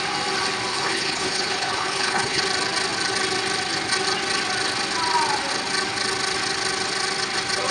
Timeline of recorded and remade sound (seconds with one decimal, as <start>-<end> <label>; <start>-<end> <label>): 0.0-0.7 recorded; 0.7-2.4 remade; 2.4-7.7 recorded